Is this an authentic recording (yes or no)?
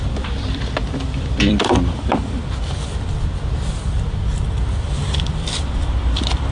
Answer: no